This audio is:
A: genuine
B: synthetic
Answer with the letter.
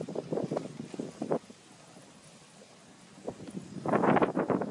A